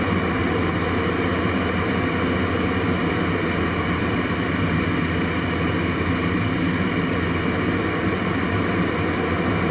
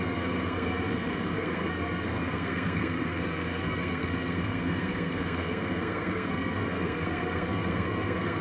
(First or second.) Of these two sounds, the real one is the first